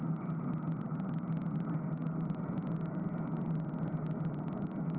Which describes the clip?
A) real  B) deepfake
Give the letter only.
A